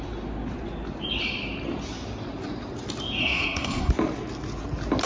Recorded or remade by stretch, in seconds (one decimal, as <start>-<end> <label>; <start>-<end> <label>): 0.0-3.2 recorded; 3.2-3.9 remade; 3.9-5.1 recorded